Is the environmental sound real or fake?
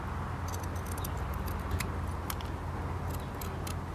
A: real